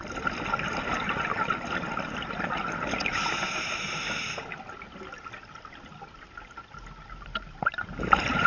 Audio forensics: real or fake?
real